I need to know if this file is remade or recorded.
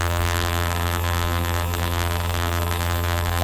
remade